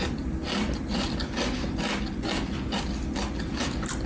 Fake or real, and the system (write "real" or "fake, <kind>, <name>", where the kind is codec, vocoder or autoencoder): real